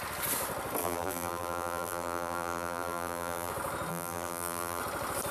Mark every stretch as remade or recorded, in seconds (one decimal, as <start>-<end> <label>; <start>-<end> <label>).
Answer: 0.0-0.8 recorded; 0.8-3.5 remade; 3.5-3.9 recorded; 3.9-4.8 remade; 4.8-5.3 recorded